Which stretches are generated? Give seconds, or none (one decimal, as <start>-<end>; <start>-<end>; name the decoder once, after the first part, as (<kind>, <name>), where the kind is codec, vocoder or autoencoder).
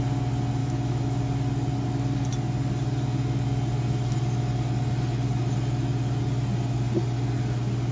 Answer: 0.6-1.2 (autoencoder, DAC-VAE)